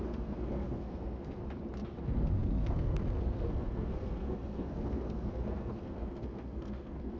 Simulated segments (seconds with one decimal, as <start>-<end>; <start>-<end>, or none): 0.0-1.4; 2.0-7.2